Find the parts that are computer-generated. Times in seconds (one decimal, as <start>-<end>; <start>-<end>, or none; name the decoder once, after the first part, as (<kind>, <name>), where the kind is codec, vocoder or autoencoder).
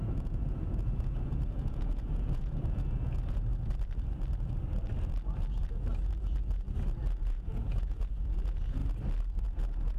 0.0-3.5 (vocoder, Vocos); 7.2-8.8; 9.4-10.0